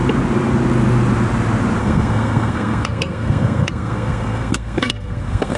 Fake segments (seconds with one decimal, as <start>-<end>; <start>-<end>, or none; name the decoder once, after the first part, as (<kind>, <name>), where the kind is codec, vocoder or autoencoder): 1.8-5.6 (codec, SNAC)